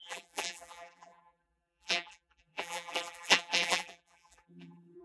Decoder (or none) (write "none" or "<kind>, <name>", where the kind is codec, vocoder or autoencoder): vocoder, BigVGAN v2